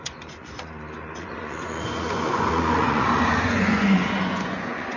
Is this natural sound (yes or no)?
no